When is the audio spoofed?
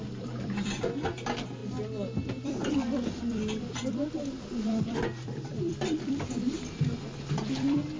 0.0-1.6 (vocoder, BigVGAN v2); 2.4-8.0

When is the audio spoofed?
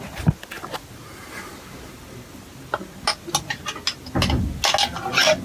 none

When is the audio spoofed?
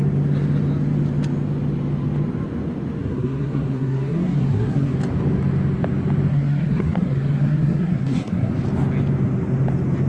3.0-4.9 (codec, SNAC); 6.3-8.5